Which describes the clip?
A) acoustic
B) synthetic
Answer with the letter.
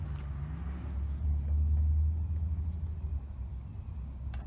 A